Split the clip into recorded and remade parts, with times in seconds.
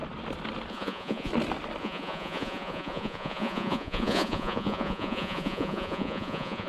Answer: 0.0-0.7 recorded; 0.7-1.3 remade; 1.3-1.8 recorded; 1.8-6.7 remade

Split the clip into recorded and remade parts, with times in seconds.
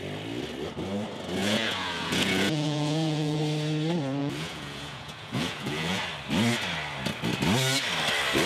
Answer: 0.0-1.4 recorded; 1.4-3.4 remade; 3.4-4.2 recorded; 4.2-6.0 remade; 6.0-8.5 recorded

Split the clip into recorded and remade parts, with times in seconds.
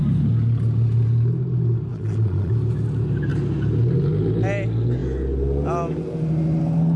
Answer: 0.0-1.9 recorded; 1.9-2.5 remade; 2.5-7.0 recorded